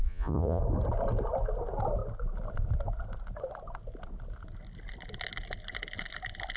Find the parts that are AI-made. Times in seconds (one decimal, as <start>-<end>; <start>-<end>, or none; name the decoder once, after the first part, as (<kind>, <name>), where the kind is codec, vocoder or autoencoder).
0.0-0.6 (vocoder, Vocos)